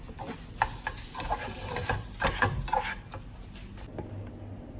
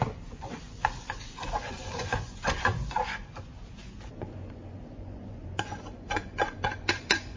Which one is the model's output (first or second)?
second